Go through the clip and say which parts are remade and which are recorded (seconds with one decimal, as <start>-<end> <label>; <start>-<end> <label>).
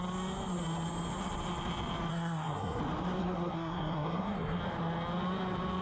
0.0-2.1 recorded; 2.1-2.8 remade; 2.8-3.2 recorded; 3.2-4.6 remade; 4.6-5.8 recorded